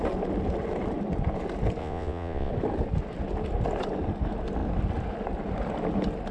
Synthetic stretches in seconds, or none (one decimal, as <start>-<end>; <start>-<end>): 1.8-2.5